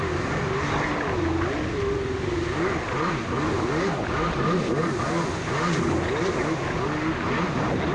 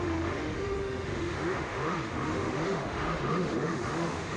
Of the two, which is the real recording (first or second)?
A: first